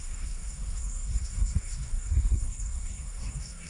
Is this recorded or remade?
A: remade